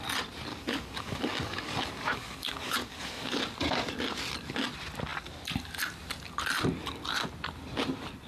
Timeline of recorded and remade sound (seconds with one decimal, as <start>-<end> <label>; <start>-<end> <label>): 0.0-0.5 recorded; 0.5-3.4 remade; 3.4-8.3 recorded

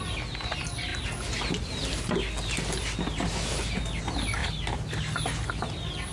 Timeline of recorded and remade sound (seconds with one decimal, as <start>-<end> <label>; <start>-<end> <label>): 0.0-6.1 recorded

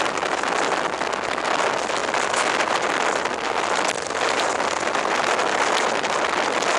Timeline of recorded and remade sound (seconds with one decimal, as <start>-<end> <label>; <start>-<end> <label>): 0.0-6.8 recorded

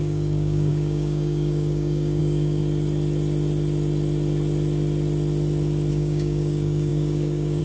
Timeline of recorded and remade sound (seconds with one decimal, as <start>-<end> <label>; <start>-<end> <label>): 0.0-2.6 remade; 2.6-5.9 recorded; 5.9-7.6 remade